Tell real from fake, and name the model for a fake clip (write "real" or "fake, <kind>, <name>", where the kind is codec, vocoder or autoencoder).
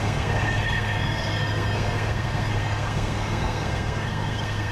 fake, codec, SNAC